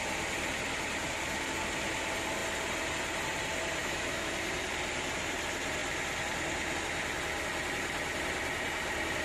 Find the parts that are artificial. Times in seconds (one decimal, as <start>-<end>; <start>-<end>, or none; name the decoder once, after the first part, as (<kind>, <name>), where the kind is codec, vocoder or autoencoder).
3.8-4.3 (autoencoder, DAC-VAE)